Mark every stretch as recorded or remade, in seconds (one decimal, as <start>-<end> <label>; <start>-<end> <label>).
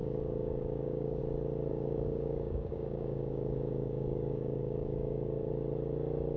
0.0-1.2 remade; 1.2-1.7 recorded; 1.7-5.5 remade; 5.5-6.4 recorded